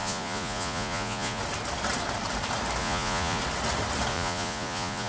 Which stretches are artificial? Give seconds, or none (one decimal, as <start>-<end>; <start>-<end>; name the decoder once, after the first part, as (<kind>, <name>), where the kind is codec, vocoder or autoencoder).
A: 0.0-1.4 (vocoder, Vocos); 2.8-3.4; 4.1-5.1